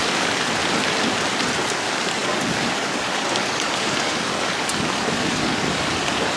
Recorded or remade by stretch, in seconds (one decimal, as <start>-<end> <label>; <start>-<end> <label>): 0.0-0.6 remade; 0.6-1.7 recorded; 1.7-6.4 remade